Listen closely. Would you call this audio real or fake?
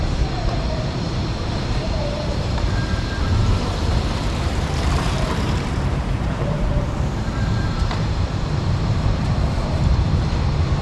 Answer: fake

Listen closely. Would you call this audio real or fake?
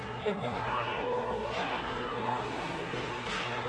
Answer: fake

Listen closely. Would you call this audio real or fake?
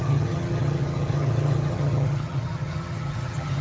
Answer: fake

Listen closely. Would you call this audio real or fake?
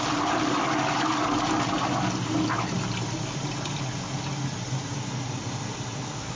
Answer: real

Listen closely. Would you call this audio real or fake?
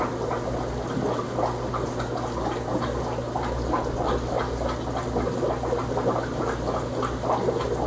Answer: real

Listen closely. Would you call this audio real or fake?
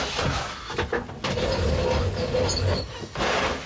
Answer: real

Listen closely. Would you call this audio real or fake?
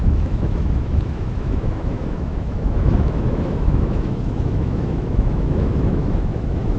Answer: fake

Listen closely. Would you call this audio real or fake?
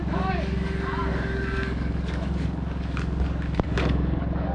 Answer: fake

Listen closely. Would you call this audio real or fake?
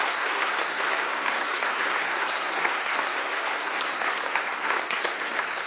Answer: fake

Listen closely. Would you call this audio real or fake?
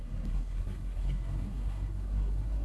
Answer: fake